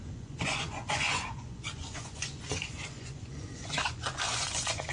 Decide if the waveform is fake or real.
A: fake